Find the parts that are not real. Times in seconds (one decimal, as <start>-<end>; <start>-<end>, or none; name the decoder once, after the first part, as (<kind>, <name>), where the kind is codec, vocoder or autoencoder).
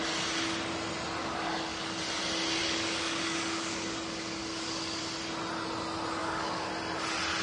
1.2-2.0 (codec, DAC); 2.6-5.0; 6.2-6.7